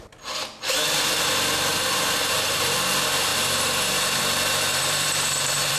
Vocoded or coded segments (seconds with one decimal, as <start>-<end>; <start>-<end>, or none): 1.7-2.9; 3.3-4.2; 4.7-5.8